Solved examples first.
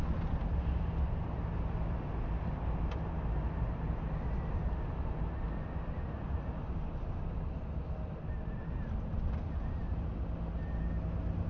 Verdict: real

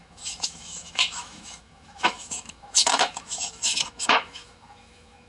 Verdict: fake